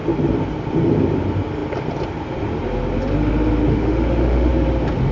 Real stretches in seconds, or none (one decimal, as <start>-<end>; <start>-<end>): 0.0-3.7; 4.5-5.1

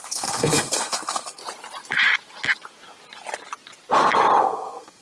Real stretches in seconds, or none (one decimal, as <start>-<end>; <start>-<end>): 1.4-4.4

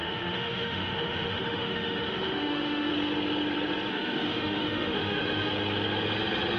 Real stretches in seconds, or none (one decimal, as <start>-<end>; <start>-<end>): 2.9-3.9; 5.5-6.6

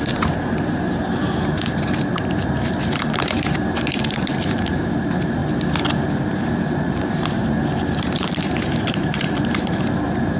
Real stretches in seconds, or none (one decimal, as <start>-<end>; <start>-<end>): 5.4-6.4

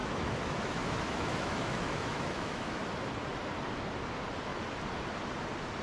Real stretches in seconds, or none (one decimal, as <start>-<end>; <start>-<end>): 2.8-5.8

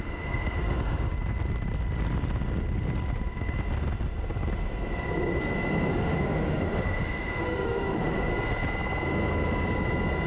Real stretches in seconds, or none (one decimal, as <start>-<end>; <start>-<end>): 1.1-5.9; 8.3-10.3

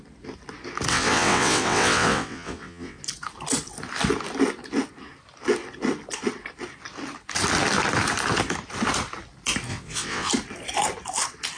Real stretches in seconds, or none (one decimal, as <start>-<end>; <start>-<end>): 0.0-0.9; 3.0-9.7; 10.3-11.6

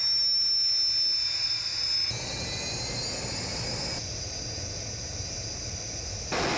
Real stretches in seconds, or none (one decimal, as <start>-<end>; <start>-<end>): 0.0-6.6